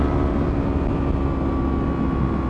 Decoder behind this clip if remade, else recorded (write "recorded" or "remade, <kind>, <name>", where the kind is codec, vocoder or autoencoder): recorded